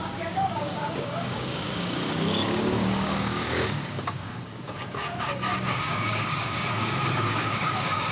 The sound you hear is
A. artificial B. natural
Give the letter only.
A